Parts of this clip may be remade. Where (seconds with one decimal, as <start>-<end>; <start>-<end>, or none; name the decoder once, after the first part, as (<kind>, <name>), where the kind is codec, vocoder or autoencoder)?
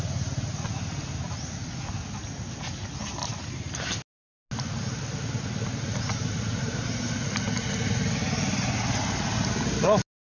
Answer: none